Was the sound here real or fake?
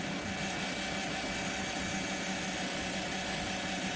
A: real